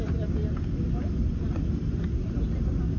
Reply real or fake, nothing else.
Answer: real